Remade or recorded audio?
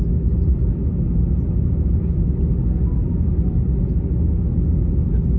recorded